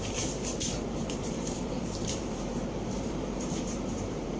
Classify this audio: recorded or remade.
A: remade